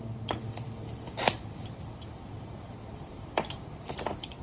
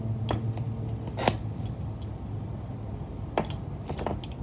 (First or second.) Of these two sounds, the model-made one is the first